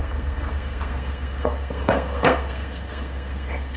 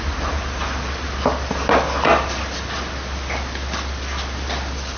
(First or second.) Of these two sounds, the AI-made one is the first